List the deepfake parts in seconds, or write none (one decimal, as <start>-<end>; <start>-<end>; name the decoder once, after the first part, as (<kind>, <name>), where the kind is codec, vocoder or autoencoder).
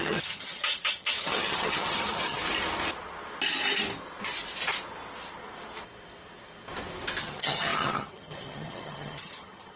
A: 0.0-2.4 (vocoder, HiFi-GAN); 7.2-9.8